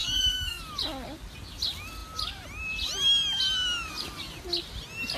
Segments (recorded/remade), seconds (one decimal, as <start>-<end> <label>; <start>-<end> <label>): 0.0-0.6 remade; 0.6-5.2 recorded